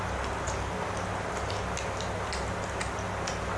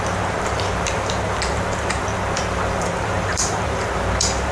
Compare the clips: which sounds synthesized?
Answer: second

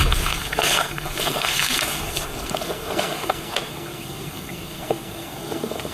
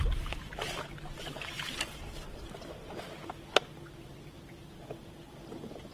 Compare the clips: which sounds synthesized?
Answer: first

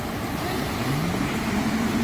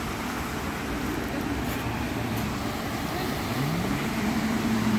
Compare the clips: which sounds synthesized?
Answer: first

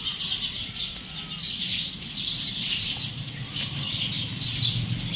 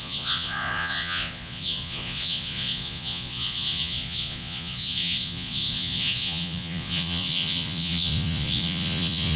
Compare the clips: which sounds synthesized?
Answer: second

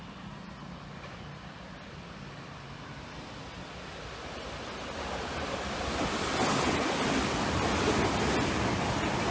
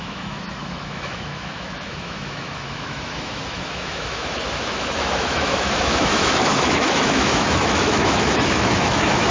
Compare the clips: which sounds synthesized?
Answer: second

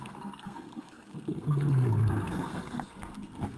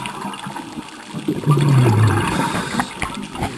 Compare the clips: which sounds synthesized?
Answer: first